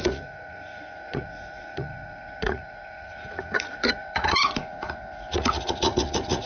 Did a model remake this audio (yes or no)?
yes